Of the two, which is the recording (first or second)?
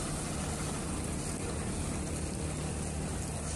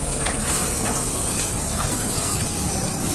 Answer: first